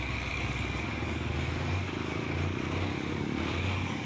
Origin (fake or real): fake